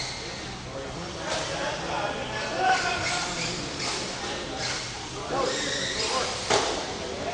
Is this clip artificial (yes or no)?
no